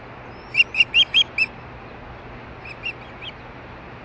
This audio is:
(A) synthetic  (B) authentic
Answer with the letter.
B